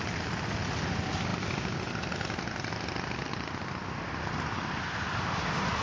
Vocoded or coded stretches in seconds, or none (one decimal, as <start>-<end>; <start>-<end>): none